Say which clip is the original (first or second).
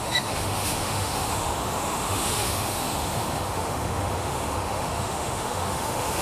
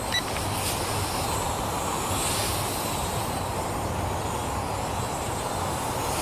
second